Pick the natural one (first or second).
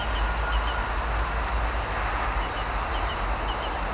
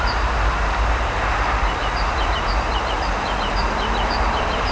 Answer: first